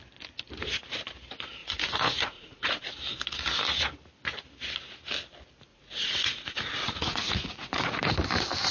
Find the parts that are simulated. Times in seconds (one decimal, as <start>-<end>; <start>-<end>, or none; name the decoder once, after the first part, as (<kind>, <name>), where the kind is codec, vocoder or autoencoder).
1.6-2.9 (vocoder, Vocos); 5.7-8.1